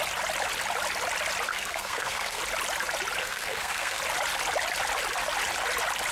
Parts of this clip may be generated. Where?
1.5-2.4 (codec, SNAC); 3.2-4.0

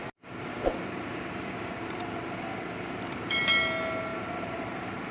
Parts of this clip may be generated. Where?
none

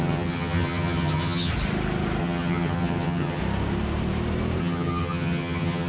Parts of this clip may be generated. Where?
0.0-1.5 (vocoder, HiFi-GAN); 2.2-3.4; 4.6-5.9

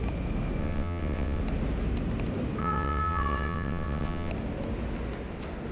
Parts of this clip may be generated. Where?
0.6-1.4 (vocoder, WaveNeXt); 2.6-4.3

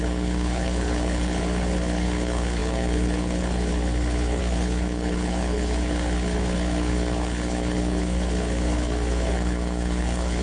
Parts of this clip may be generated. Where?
0.0-10.4 (codec, HILCodec)

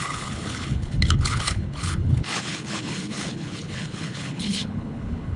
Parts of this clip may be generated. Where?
0.0-5.4 (codec, HILCodec)

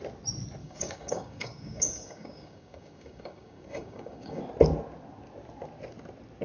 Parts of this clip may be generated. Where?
0.6-4.4 (codec, DAC)